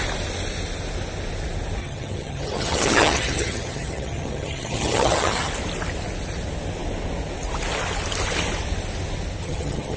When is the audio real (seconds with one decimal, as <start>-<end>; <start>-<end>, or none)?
0.0-1.8; 5.5-9.4